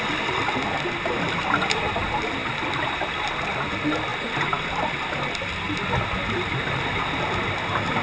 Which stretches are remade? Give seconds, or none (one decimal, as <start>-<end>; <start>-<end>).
none